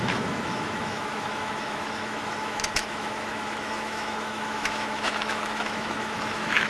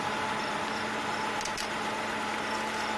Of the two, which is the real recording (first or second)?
second